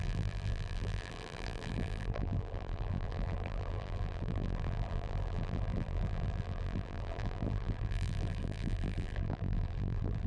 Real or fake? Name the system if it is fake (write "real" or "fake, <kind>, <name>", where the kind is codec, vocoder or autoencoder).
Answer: fake, vocoder, BigVGAN v2